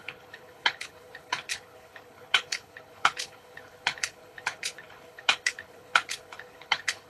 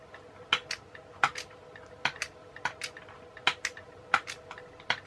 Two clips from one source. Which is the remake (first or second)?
first